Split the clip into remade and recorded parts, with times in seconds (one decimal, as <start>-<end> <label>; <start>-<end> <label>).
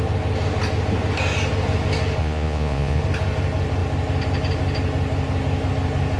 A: 0.0-2.2 recorded; 2.2-3.0 remade; 3.0-6.2 recorded